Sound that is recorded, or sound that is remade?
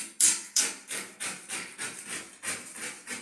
remade